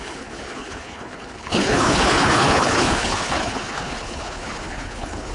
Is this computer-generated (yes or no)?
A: yes